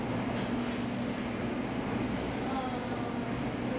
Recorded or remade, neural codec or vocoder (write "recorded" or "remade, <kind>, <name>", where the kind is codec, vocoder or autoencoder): recorded